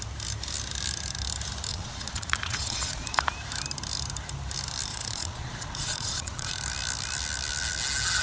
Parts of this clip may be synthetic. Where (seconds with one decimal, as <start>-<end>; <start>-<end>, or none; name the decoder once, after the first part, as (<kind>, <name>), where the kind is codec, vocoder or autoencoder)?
1.7-3.2 (vocoder, Vocos); 4.9-6.5